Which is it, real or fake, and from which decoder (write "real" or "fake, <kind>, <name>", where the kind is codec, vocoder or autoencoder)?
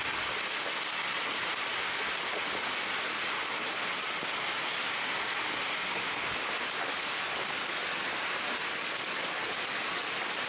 real